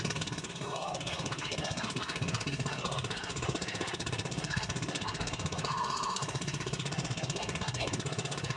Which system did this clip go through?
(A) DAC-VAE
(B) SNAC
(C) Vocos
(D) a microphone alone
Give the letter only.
B